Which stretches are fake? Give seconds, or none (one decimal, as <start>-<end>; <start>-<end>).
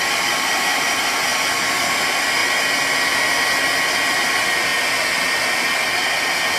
0.0-1.3; 1.9-2.4; 4.1-4.7